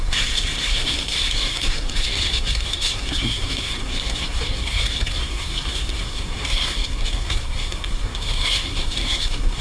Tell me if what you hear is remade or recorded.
remade